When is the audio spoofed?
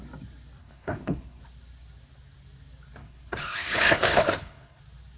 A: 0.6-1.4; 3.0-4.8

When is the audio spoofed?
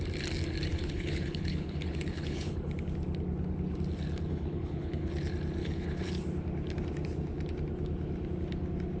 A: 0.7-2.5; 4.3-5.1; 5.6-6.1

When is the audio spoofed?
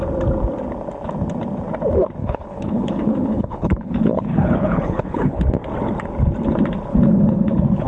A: 2.2-5.4; 6.9-7.9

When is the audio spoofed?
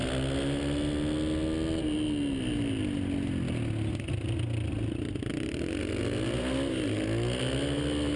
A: none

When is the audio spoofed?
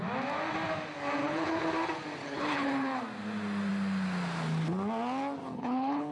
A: 1.2-1.7; 2.2-3.0; 5.4-6.1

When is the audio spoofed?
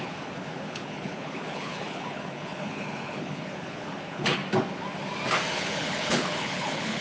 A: 0.0-4.4; 5.5-7.0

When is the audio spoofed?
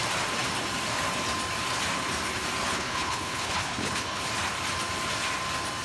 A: 2.7-4.2